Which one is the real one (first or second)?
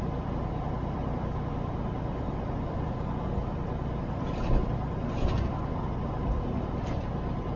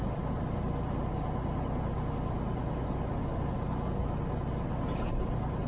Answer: second